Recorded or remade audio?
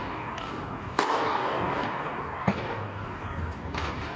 remade